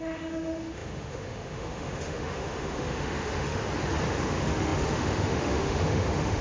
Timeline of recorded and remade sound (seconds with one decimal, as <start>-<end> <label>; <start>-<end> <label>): 0.0-3.6 remade; 3.6-4.2 recorded; 4.2-6.4 remade